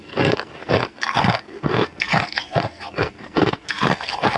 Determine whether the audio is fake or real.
fake